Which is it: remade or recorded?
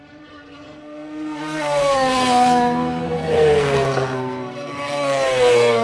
remade